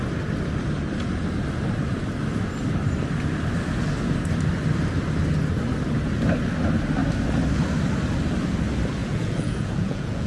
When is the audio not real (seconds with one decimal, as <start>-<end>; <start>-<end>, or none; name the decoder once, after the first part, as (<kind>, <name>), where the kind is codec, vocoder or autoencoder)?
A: 9.0-10.3 (vocoder, Vocos)